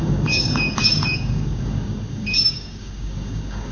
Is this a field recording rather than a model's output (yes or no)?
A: no